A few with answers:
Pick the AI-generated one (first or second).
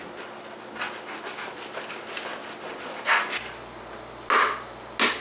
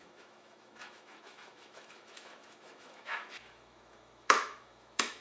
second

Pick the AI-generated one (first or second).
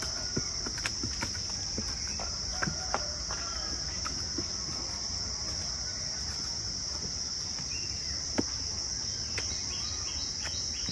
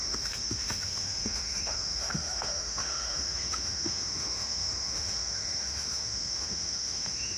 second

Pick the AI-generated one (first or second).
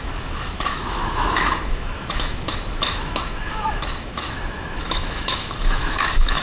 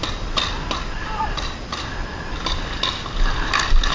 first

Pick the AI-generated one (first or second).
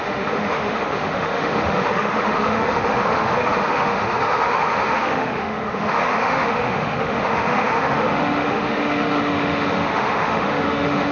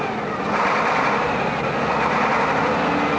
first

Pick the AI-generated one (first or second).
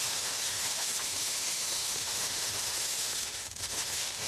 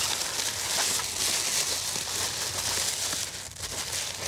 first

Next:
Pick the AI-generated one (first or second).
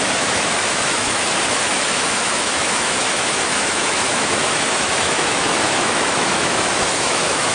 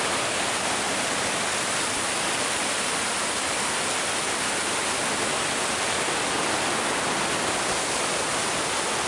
first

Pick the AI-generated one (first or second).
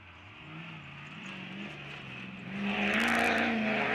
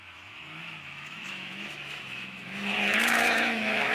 second